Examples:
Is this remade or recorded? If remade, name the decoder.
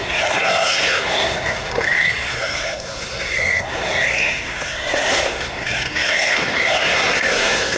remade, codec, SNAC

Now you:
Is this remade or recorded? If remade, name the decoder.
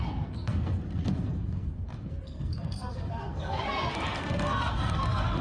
remade, codec, SNAC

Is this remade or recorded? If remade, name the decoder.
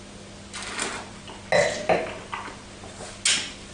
recorded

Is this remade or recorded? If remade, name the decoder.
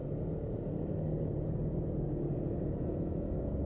recorded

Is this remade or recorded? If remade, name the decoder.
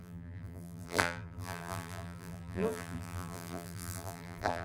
remade, vocoder, BigVGAN v2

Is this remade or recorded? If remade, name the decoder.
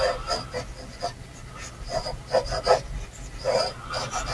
recorded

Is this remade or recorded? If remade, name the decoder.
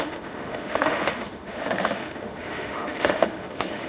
remade, autoencoder, DAC-VAE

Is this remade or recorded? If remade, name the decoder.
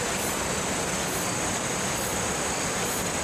recorded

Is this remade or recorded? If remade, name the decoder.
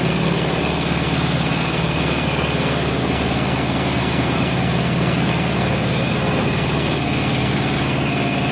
remade, codec, SNAC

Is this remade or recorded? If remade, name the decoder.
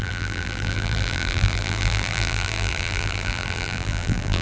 remade, vocoder, BigVGAN v2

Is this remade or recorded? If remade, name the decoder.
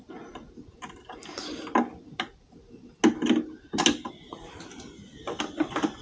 recorded